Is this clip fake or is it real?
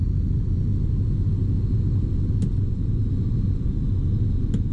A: real